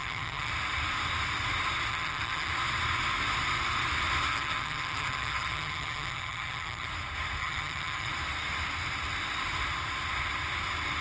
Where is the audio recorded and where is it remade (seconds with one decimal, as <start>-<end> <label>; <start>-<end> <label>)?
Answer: 0.0-0.5 remade; 0.5-1.9 recorded; 1.9-2.5 remade; 2.5-4.3 recorded; 4.3-6.9 remade; 6.9-7.4 recorded; 7.4-8.1 remade; 8.1-11.0 recorded